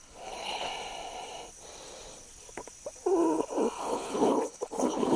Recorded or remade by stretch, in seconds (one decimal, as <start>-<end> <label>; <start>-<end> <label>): 0.0-0.7 remade; 0.7-3.8 recorded; 3.8-5.2 remade